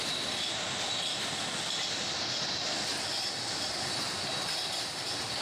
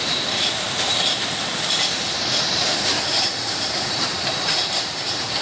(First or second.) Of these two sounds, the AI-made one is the second